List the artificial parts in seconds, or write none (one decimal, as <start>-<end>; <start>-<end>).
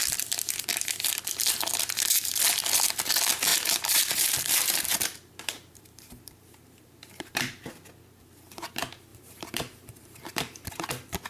3.5-7.7; 9.1-10.9